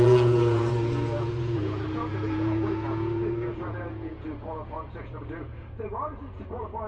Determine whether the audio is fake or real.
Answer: fake